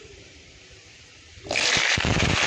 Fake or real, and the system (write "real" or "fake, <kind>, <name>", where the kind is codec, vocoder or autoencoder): fake, vocoder, BigVGAN v2